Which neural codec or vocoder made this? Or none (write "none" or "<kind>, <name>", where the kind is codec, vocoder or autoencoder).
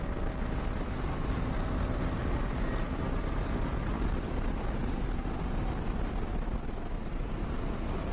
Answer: none